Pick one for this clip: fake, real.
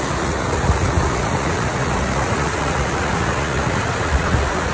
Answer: fake